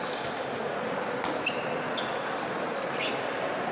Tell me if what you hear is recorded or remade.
recorded